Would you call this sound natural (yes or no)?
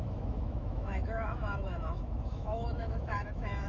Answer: no